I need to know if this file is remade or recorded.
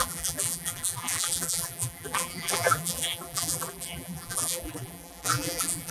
remade